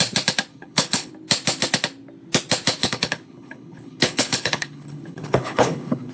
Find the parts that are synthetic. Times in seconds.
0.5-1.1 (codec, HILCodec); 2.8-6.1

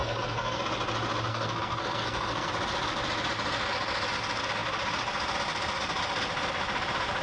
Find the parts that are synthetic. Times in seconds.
0.0-0.6 (codec, SNAC); 1.3-2.5

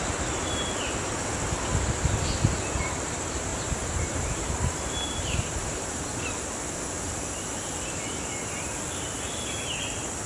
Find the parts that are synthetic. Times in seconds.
3.5-4.5 (vocoder, BigVGAN v2); 5.6-6.3

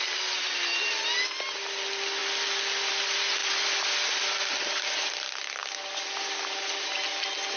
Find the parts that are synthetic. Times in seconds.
none

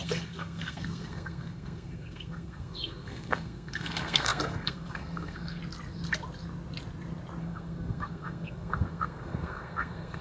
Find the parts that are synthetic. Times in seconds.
0.0-5.6 (codec, SNAC); 7.4-10.2

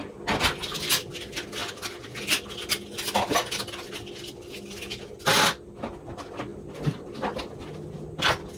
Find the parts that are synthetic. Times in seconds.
none

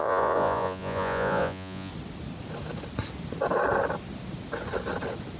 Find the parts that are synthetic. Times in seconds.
0.0-1.9 (vocoder, Vocos)